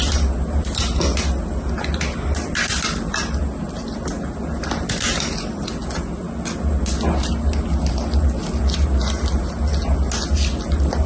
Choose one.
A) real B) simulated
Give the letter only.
A